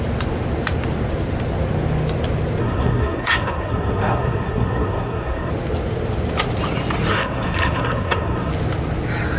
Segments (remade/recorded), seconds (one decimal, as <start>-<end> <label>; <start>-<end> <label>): 0.0-2.6 recorded; 2.6-5.5 remade; 5.5-7.1 recorded; 7.1-8.5 remade; 8.5-9.4 recorded